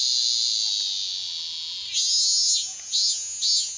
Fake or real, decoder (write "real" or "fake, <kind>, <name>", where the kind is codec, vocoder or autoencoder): real